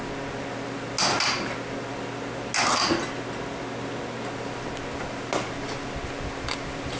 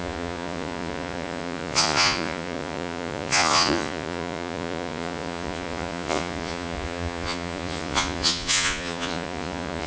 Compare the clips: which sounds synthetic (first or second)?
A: second